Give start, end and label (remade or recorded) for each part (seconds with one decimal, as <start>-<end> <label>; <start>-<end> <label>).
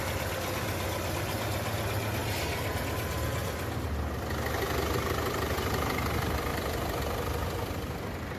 0.0-2.2 recorded; 2.2-2.8 remade; 2.8-6.5 recorded; 6.5-7.0 remade; 7.0-8.4 recorded